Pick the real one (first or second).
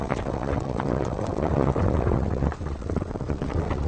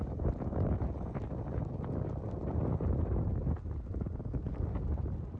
second